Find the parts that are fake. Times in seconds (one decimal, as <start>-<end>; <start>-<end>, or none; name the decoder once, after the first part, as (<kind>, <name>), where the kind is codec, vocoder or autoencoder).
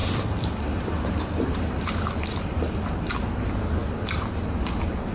0.0-3.1 (vocoder, BigVGAN v2)